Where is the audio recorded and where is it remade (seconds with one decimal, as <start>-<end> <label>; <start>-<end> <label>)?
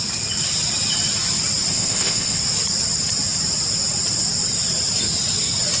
0.0-1.7 recorded; 1.7-2.4 remade; 2.4-5.8 recorded